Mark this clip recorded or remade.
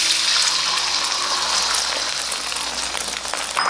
recorded